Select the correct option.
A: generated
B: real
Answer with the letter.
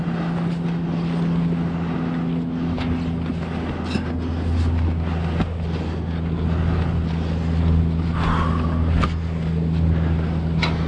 B